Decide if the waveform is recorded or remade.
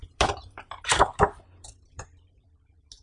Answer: remade